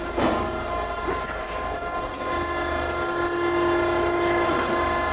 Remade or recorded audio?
recorded